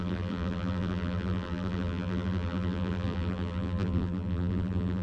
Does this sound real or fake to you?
fake